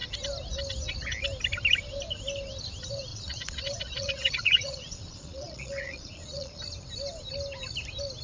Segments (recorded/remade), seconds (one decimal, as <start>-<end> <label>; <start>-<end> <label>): 0.0-3.1 recorded; 3.1-6.6 remade; 6.6-8.2 recorded